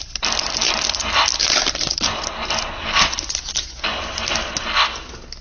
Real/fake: real